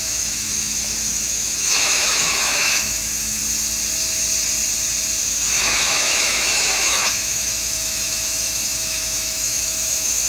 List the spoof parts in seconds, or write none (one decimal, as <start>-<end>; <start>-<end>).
0.0-3.4; 5.2-10.3